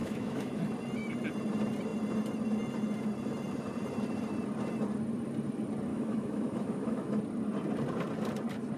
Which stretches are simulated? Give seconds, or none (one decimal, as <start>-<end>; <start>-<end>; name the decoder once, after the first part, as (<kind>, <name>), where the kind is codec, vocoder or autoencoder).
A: 0.0-0.6 (autoencoder, DAC-VAE); 5.9-7.2